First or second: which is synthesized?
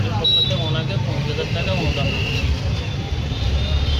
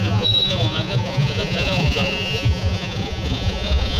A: second